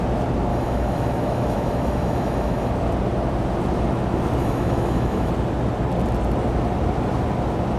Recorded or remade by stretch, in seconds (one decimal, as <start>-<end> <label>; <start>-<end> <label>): 0.0-0.5 recorded; 0.5-2.7 remade; 2.7-4.4 recorded; 4.4-5.3 remade; 5.3-7.8 recorded